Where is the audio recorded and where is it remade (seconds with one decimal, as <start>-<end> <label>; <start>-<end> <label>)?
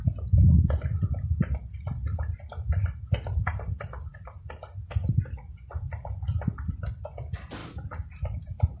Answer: 0.0-7.6 recorded; 7.6-8.8 remade